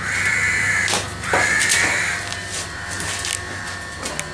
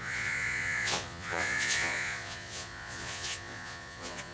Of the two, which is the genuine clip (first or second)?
first